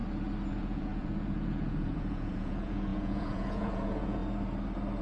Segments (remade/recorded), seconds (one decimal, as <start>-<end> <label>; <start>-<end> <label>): 0.0-0.5 recorded; 0.5-4.2 remade; 4.2-5.0 recorded